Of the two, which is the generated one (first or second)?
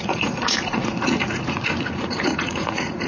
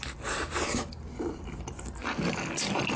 first